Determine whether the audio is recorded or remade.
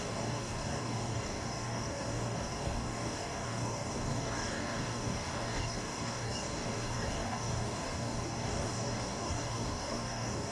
remade